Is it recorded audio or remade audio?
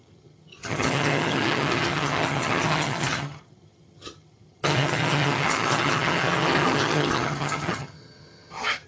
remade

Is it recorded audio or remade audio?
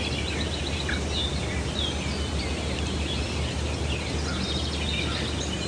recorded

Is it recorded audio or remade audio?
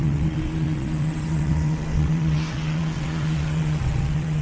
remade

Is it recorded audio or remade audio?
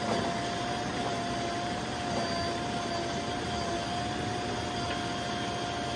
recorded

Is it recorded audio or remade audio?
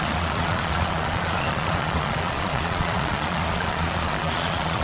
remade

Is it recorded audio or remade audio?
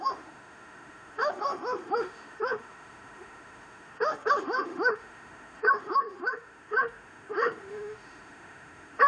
remade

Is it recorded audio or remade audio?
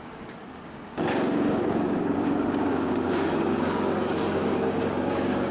remade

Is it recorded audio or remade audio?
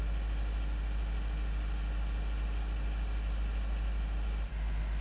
recorded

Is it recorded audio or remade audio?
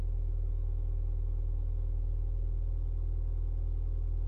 recorded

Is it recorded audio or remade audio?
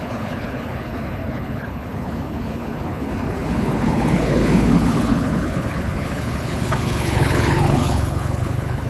remade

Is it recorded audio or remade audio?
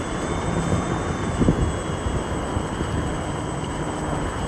remade